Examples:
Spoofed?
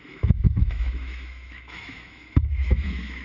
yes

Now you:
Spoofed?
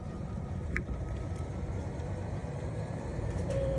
yes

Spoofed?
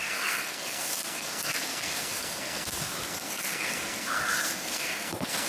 yes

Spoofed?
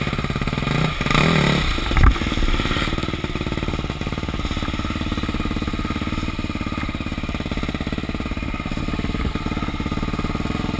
no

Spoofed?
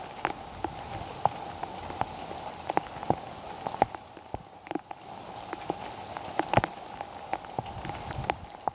no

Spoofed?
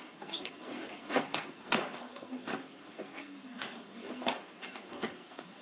yes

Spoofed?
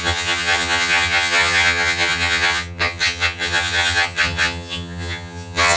yes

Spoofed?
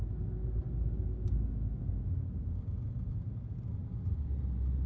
no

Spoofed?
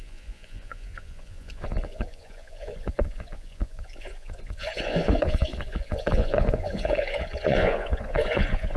yes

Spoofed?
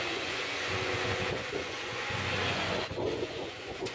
yes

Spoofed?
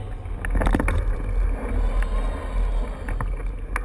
no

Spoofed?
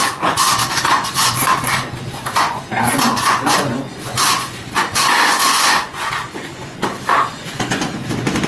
yes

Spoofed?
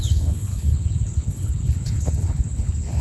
yes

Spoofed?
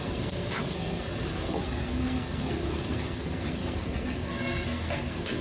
yes